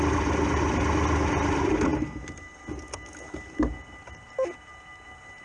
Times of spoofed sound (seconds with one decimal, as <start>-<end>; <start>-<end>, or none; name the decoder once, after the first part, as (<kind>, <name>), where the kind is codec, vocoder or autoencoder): none